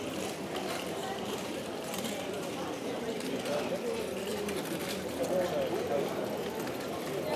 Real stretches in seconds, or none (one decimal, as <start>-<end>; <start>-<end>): 0.0-1.0; 3.8-7.4